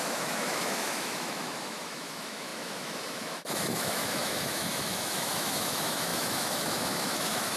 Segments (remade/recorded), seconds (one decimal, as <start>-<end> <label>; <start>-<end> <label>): 0.0-7.6 remade

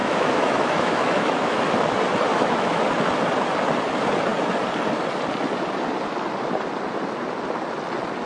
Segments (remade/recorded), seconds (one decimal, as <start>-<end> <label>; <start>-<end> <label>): 0.0-1.6 remade; 1.6-2.3 recorded; 2.3-2.8 remade; 2.8-8.3 recorded

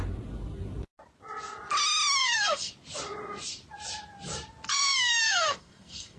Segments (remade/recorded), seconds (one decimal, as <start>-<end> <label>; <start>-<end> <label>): 0.0-2.2 recorded; 2.2-2.7 remade; 2.7-4.7 recorded; 4.7-6.2 remade

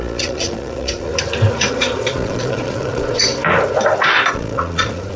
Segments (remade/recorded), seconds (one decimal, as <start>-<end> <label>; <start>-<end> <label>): 0.0-1.1 remade; 1.1-1.7 recorded; 1.7-3.3 remade; 3.3-4.3 recorded; 4.3-5.2 remade

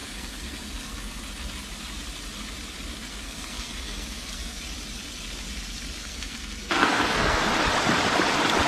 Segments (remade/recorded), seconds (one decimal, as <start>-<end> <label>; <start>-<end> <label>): 0.0-1.2 remade; 1.2-3.1 recorded; 3.1-4.6 remade; 4.6-6.0 recorded; 6.0-7.5 remade; 7.5-8.7 recorded

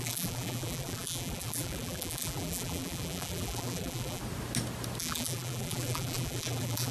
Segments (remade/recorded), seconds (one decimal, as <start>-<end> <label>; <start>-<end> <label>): 0.0-4.2 remade; 4.2-5.0 recorded; 5.0-6.9 remade

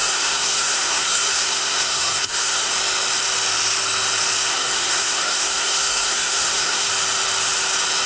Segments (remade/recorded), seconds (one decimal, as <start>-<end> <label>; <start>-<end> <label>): 0.0-2.7 remade; 2.7-4.5 recorded; 4.5-6.9 remade; 6.9-8.1 recorded

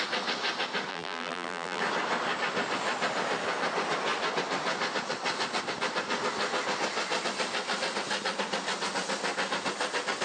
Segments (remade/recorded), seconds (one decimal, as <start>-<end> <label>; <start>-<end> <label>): 0.0-0.9 recorded; 0.9-1.8 remade; 1.8-10.2 recorded